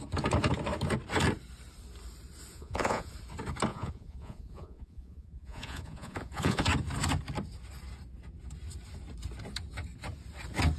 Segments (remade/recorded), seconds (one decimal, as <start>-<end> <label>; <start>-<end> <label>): 0.0-2.5 recorded; 2.5-3.1 remade; 3.1-3.7 recorded; 3.7-6.6 remade; 6.6-10.8 recorded